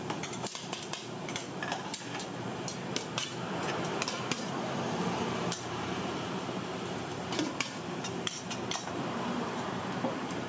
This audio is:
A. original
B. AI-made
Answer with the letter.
B